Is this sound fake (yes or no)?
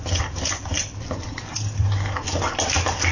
no